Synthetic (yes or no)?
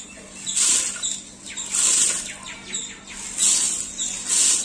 no